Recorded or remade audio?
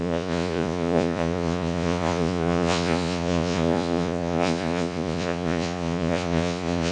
remade